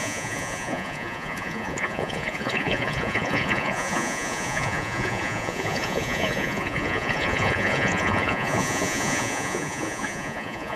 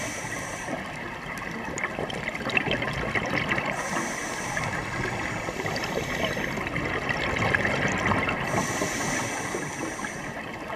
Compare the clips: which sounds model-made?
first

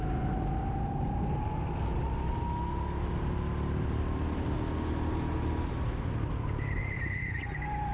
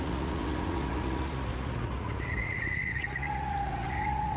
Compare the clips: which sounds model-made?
second